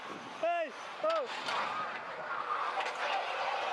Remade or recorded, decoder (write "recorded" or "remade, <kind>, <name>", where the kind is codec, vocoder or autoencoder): recorded